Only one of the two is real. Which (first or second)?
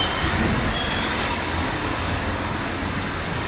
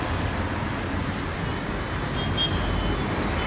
second